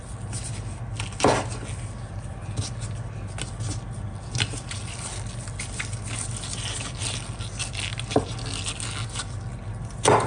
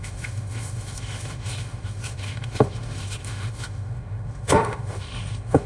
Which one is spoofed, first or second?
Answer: second